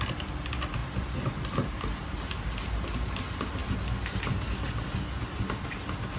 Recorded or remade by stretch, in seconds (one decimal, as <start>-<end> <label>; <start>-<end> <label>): 0.0-6.2 recorded